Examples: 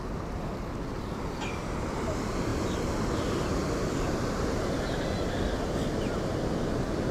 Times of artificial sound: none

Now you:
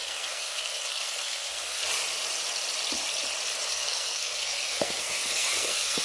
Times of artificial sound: 0.0-1.8 (codec, SNAC); 3.7-6.0

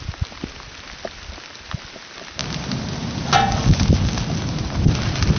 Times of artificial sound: none

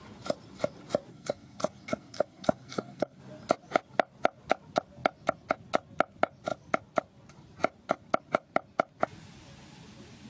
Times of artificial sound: 1.1-3.2 (codec, SNAC)

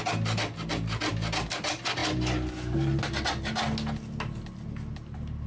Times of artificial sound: none

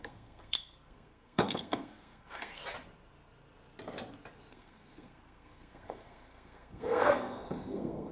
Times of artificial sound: 0.0-2.6 (codec, SNAC); 4.5-8.1

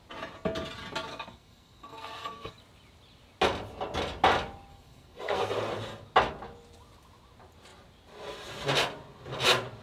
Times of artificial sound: 1.1-2.5 (codec, SNAC); 4.7-5.5

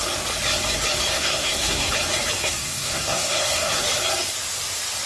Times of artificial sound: 1.1-1.9 (codec, SNAC); 2.4-3.8